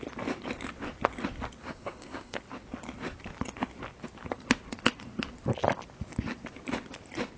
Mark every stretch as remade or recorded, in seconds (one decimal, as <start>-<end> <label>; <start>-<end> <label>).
0.0-1.6 recorded; 1.6-2.4 remade; 2.4-7.4 recorded